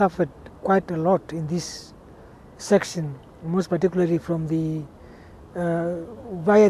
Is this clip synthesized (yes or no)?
no